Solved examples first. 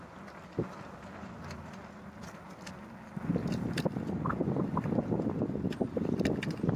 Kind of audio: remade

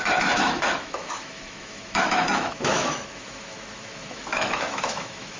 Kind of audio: remade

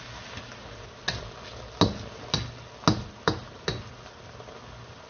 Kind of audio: recorded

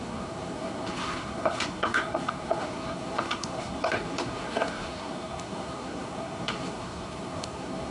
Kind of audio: remade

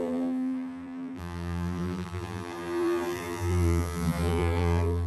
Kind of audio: remade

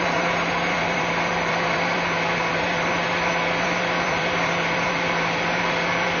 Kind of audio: remade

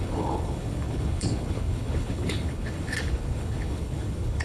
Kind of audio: remade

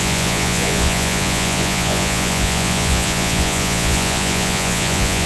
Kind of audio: remade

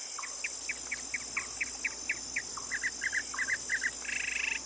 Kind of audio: recorded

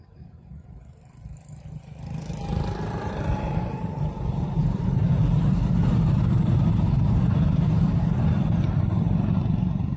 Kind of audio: remade